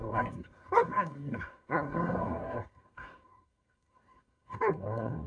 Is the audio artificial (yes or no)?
yes